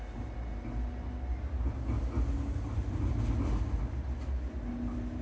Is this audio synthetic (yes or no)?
no